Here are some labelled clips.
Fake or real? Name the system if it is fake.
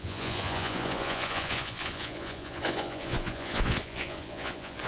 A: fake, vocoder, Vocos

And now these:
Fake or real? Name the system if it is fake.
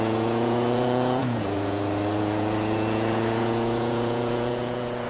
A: fake, vocoder, Vocos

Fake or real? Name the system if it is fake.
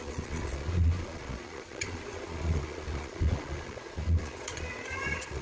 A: fake, vocoder, Vocos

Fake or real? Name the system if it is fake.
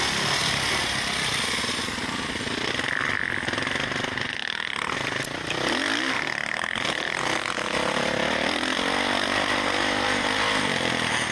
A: real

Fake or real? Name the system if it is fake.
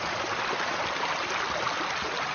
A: real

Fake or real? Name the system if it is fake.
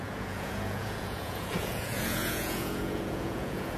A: fake, vocoder, Vocos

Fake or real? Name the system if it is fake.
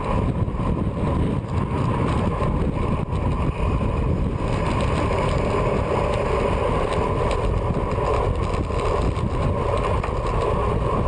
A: real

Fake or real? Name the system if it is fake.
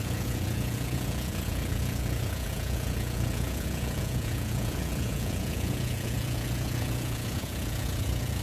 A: fake, vocoder, Vocos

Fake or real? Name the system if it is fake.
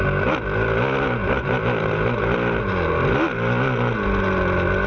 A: real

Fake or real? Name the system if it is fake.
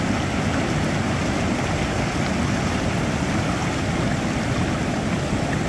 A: real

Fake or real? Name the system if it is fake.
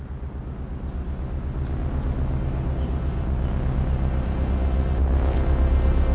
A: real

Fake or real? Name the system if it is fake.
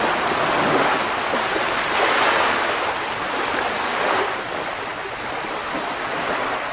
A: real